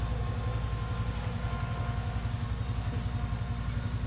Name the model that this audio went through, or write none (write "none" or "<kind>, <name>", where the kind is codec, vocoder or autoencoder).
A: none